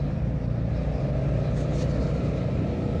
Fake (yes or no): no